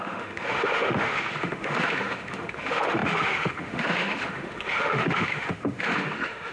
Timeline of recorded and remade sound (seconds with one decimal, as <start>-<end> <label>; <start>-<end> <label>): 0.0-6.5 remade